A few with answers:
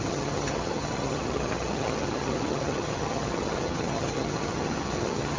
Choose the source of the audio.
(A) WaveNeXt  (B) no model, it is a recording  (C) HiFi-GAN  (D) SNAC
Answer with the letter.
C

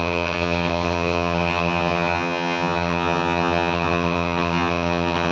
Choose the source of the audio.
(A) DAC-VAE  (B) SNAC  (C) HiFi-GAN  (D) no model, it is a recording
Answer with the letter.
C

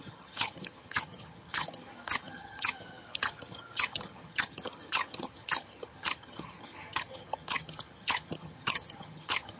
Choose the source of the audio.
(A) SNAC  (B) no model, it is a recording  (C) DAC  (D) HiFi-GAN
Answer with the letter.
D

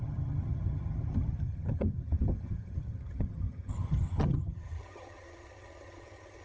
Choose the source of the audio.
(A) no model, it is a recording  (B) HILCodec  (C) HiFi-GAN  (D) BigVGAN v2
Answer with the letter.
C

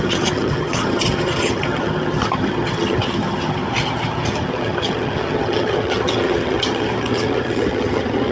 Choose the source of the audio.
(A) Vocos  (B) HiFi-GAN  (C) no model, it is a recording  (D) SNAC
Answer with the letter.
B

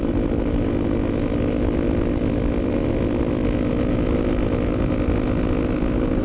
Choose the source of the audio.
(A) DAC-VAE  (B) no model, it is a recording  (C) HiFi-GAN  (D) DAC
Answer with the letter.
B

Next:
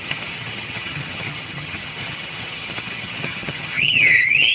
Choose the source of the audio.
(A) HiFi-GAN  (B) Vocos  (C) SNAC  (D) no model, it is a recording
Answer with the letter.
A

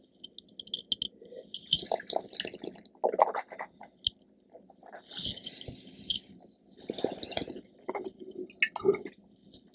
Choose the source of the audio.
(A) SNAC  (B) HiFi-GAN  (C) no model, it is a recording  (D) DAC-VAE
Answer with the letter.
C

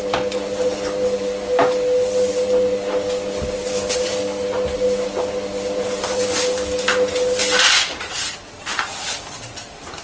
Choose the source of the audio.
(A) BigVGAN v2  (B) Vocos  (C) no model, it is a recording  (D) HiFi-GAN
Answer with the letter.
C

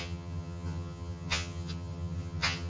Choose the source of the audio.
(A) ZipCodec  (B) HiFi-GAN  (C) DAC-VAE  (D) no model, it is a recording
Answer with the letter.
B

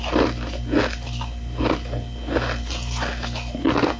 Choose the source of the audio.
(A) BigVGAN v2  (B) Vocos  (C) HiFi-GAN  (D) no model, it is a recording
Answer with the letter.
D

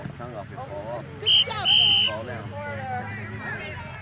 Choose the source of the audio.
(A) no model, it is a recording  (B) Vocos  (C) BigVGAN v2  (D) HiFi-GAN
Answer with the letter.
A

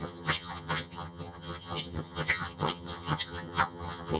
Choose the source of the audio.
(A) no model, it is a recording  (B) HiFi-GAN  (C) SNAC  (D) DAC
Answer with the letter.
B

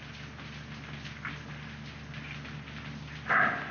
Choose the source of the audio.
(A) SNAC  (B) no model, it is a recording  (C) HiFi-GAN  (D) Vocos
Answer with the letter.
B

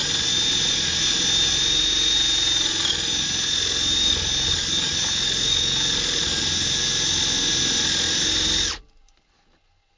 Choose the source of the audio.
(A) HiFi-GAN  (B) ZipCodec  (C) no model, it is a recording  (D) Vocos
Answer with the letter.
C